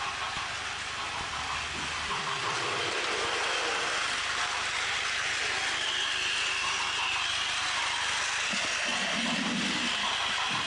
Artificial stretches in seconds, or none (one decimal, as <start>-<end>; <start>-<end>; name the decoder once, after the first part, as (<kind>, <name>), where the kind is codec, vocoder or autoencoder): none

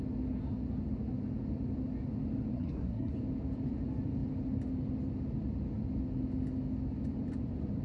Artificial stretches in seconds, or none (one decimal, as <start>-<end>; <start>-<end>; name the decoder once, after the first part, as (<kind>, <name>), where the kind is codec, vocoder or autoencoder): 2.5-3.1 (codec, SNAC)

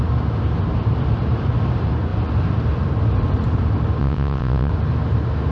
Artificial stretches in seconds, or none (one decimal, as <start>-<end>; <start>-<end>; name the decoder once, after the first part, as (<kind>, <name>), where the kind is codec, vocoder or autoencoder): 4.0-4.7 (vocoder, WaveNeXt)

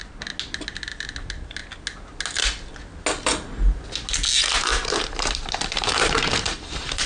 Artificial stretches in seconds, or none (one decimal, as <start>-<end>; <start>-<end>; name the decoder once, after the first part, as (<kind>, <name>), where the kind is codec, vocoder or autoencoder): 4.7-7.1 (vocoder, BigVGAN v2)

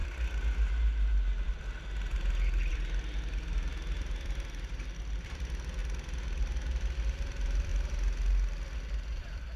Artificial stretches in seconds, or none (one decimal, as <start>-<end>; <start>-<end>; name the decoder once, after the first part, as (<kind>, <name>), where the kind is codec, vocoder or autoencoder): 2.7-5.8 (vocoder, BigVGAN v2); 7.2-7.7; 9.2-9.6

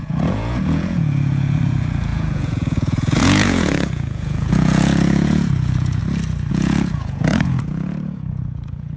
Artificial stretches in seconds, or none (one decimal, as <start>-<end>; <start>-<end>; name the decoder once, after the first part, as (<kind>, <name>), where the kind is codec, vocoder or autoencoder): 0.0-6.0 (vocoder, Vocos); 6.5-9.0

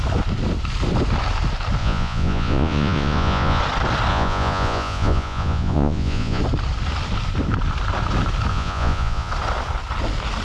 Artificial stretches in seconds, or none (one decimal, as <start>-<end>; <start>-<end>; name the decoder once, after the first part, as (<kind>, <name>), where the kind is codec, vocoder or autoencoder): 1.8-3.6 (vocoder, Vocos); 4.1-6.4; 8.5-9.3